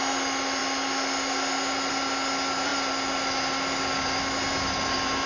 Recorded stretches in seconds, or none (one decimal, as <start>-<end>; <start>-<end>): 0.0-5.3